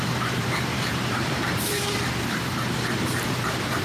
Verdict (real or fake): fake